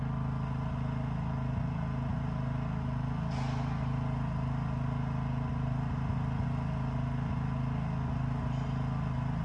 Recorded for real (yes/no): yes